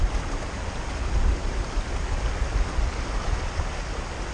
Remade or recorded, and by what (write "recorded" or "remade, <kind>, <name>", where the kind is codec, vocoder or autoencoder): recorded